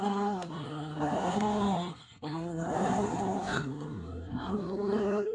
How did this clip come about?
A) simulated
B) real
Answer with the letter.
A